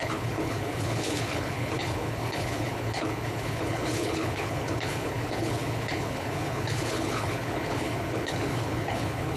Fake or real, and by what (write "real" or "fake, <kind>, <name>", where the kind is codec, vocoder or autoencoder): fake, codec, HILCodec